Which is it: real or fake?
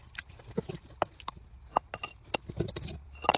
real